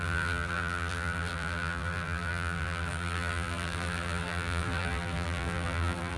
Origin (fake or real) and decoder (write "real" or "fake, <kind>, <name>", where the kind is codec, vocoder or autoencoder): fake, vocoder, BigVGAN v2